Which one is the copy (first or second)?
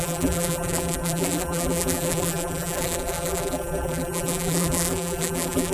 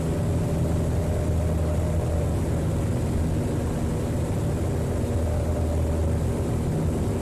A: first